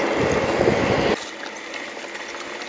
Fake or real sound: real